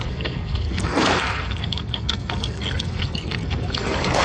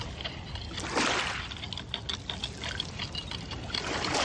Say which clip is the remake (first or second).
first